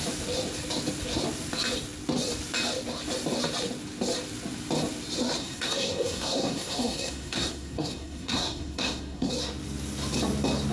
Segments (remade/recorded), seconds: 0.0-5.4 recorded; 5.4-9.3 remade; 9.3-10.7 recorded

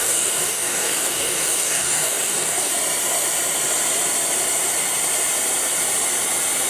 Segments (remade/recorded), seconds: 0.0-2.7 remade; 2.7-6.7 recorded

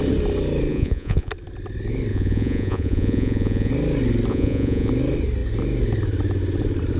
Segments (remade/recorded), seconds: 0.0-0.7 recorded; 0.7-1.3 remade; 1.3-2.1 recorded; 2.1-3.7 remade; 3.7-4.3 recorded; 4.3-4.9 remade; 4.9-7.0 recorded